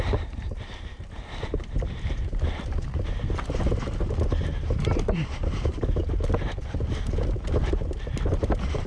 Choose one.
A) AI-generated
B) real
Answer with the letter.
A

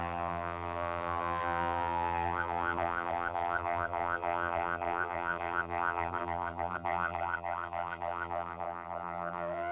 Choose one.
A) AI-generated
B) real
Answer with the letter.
A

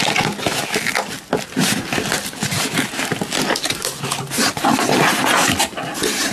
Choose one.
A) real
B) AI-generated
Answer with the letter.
A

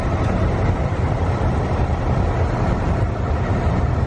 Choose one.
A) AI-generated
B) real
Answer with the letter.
B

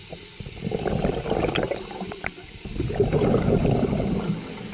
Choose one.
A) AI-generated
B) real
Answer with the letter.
B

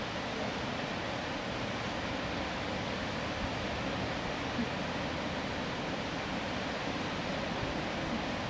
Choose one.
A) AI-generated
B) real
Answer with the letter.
B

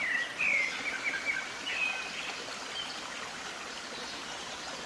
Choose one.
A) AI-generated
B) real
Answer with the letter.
B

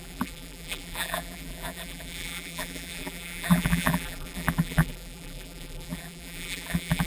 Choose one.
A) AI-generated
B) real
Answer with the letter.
A